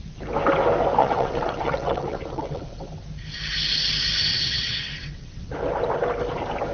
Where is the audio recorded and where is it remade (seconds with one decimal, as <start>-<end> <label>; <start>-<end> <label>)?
0.0-1.0 recorded; 1.0-2.9 remade; 2.9-4.3 recorded; 4.3-5.5 remade; 5.5-6.7 recorded